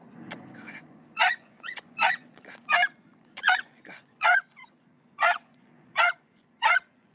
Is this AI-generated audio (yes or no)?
yes